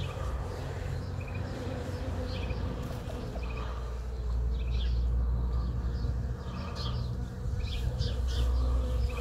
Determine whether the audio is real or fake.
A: real